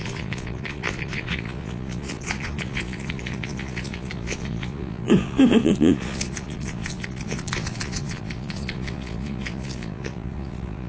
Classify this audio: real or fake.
fake